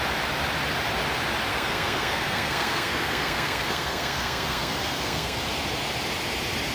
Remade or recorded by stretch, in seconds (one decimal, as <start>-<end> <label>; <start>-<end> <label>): 0.0-1.5 recorded; 1.5-5.4 remade; 5.4-6.7 recorded